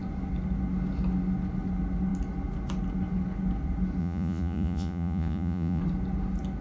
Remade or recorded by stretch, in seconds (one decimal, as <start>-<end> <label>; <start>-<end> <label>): 0.0-4.0 recorded; 4.0-5.8 remade; 5.8-6.6 recorded